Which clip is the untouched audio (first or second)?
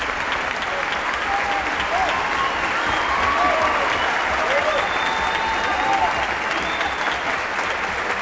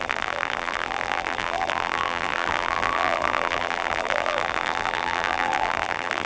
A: first